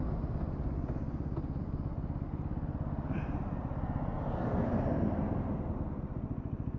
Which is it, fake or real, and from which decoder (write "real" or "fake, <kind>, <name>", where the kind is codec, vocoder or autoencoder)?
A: real